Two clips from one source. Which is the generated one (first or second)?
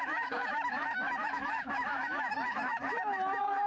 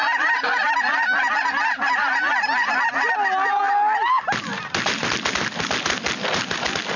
first